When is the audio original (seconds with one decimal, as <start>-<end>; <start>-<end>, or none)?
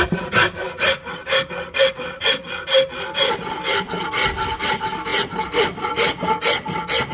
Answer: 0.0-7.1